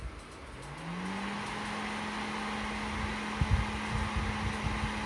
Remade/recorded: recorded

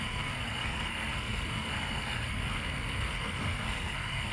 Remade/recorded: remade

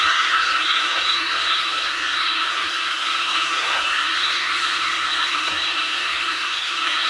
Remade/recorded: remade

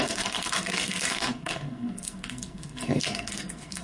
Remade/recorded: remade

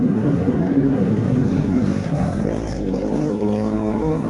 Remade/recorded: remade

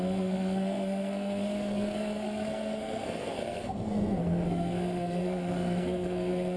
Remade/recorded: remade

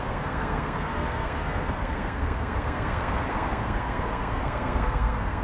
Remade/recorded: remade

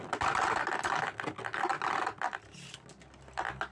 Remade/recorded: recorded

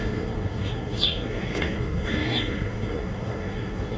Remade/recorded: remade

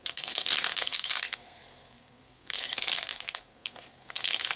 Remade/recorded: remade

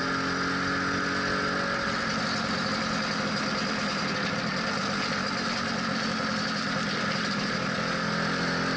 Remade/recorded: recorded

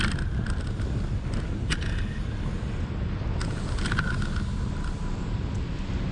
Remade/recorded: recorded